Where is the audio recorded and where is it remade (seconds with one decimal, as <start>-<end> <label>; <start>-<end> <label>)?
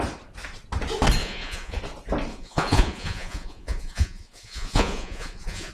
0.0-1.2 recorded; 1.2-1.8 remade; 1.8-2.3 recorded; 2.3-5.7 remade